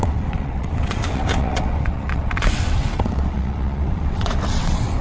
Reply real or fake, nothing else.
fake